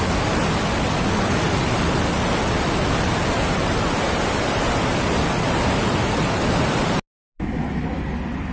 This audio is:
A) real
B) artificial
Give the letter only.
A